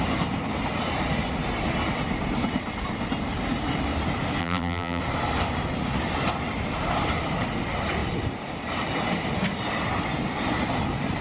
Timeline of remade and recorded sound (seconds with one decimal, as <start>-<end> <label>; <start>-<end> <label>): 0.0-4.4 recorded; 4.4-5.0 remade; 5.0-11.2 recorded